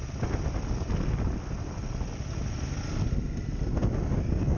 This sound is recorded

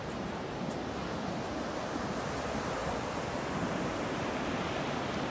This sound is recorded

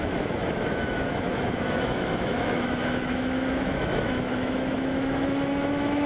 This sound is remade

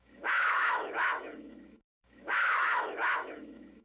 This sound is remade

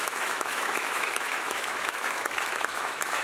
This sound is remade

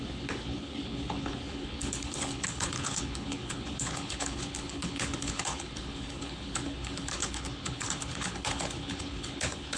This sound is remade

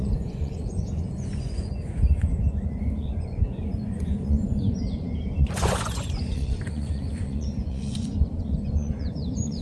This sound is remade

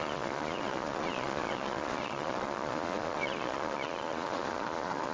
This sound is remade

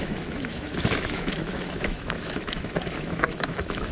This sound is remade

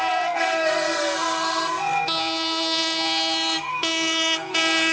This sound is remade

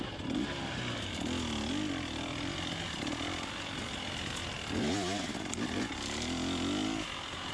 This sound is recorded